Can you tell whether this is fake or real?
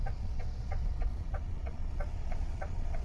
fake